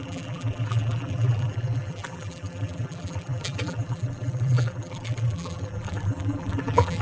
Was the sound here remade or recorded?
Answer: remade